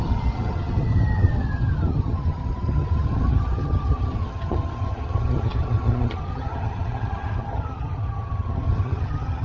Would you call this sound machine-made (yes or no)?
yes